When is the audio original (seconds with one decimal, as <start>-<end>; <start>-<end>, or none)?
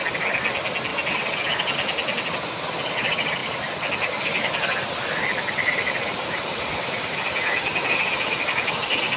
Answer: 0.0-9.2